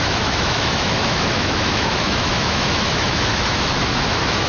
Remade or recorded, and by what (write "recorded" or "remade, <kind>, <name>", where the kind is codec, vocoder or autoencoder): remade, autoencoder, DAC-VAE